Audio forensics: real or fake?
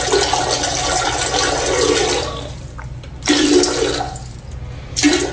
real